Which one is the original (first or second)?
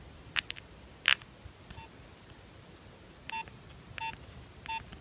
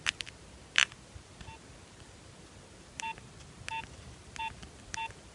first